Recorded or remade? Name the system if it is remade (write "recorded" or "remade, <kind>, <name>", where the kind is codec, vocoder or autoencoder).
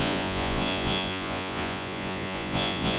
remade, vocoder, Vocos